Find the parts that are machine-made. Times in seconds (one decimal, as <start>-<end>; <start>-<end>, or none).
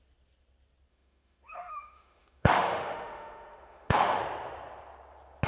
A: 0.9-4.2